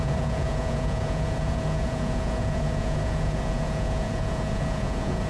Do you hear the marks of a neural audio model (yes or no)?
yes